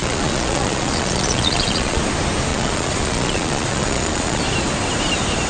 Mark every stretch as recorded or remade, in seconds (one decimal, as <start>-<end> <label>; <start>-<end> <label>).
0.0-2.0 remade; 2.0-2.5 recorded; 2.5-4.4 remade; 4.4-5.5 recorded